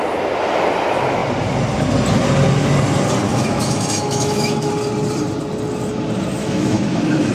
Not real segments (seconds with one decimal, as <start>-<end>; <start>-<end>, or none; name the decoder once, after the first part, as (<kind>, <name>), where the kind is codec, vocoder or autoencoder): 3.3-4.7 (autoencoder, DAC-VAE); 6.4-7.3

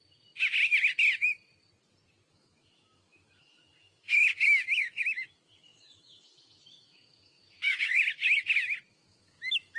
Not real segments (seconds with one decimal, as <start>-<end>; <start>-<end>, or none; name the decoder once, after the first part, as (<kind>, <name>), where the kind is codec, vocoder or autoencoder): 2.3-8.0 (autoencoder, DAC-VAE); 8.9-9.8

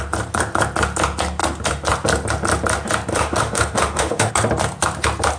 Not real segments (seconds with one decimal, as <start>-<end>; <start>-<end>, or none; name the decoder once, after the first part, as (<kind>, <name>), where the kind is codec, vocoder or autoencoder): 3.1-4.3 (autoencoder, DAC-VAE)

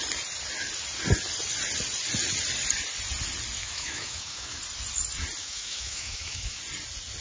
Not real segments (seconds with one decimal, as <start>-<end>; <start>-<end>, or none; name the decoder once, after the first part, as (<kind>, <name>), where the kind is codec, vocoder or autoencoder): 3.6-4.6 (autoencoder, DAC-VAE); 5.4-6.6

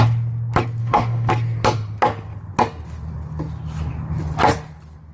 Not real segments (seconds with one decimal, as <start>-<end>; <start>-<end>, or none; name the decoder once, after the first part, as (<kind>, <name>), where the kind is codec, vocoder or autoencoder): 0.8-1.3 (autoencoder, DAC-VAE)

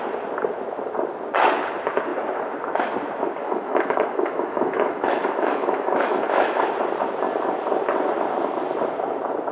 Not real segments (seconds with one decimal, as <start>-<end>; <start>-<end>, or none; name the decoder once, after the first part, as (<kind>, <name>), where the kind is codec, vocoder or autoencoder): 3.4-6.6 (autoencoder, DAC-VAE)